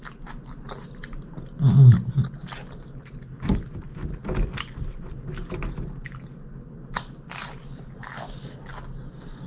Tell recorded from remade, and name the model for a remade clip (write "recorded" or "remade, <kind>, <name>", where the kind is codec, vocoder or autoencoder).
recorded